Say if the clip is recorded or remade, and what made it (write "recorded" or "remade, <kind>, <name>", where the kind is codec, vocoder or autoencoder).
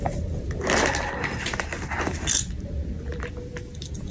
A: recorded